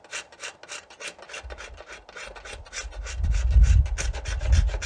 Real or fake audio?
real